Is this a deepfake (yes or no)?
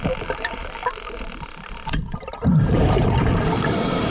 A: yes